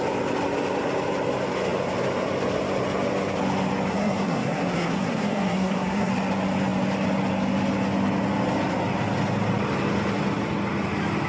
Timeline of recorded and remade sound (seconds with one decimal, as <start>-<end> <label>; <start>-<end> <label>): 0.0-3.9 recorded; 3.9-6.1 remade; 6.1-11.3 recorded